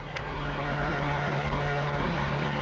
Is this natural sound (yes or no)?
no